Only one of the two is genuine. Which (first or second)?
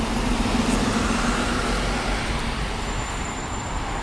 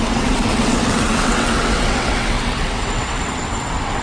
first